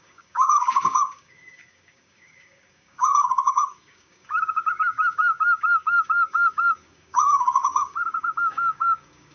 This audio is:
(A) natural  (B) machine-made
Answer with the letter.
B